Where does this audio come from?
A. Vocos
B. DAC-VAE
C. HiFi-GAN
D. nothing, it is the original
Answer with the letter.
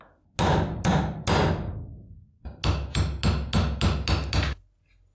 D